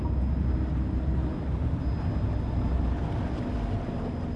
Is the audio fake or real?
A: real